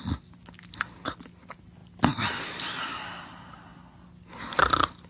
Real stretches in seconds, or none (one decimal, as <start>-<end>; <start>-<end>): 0.0-5.1